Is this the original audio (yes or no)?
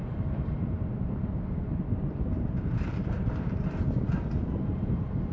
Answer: no